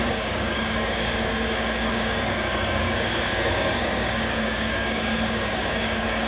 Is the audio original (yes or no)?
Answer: no